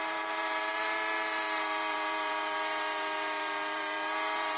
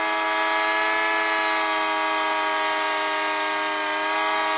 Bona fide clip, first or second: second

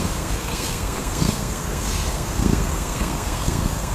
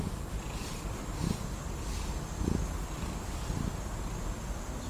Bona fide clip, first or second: second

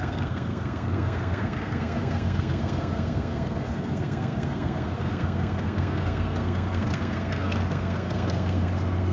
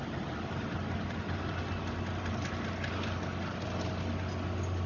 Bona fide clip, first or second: second